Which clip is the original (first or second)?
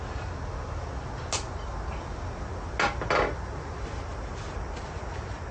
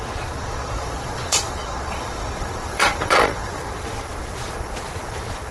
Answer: first